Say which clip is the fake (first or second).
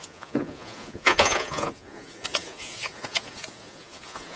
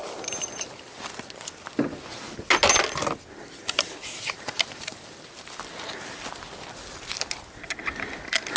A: first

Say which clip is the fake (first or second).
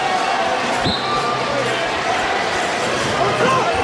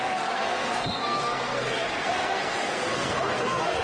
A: second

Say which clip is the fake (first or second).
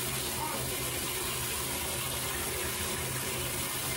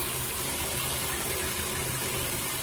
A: second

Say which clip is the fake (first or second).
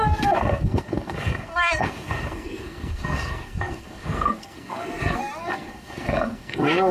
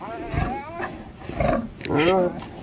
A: first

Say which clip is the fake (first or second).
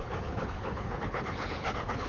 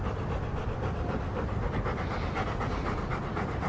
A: first